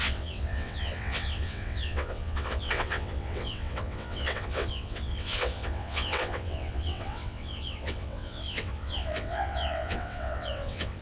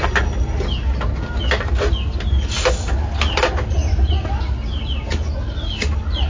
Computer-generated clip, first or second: first